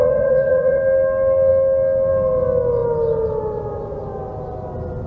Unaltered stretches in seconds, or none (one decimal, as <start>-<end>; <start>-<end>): 0.8-5.1